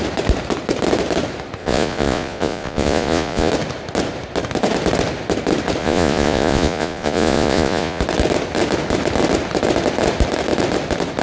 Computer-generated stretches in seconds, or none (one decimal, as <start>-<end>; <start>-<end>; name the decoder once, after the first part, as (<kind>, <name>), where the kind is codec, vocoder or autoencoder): 1.6-3.5 (vocoder, Vocos); 5.8-8.0